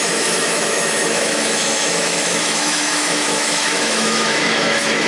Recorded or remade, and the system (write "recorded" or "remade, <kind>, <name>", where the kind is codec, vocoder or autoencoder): remade, autoencoder, DAC-VAE